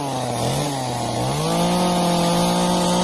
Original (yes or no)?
yes